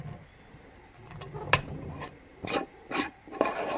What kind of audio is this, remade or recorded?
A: recorded